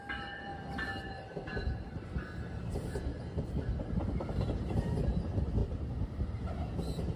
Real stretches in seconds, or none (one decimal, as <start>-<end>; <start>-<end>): 0.0-3.1; 3.7-5.6; 6.5-7.2